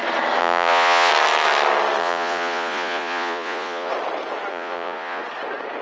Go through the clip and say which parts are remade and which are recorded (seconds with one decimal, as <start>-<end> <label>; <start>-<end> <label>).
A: 0.0-0.4 recorded; 0.4-1.1 remade; 1.1-2.0 recorded; 2.0-3.9 remade; 3.9-4.5 recorded; 4.5-5.2 remade; 5.2-5.8 recorded